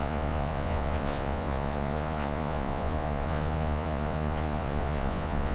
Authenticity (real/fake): fake